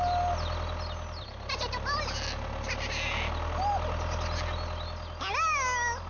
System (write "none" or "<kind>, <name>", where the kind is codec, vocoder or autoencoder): none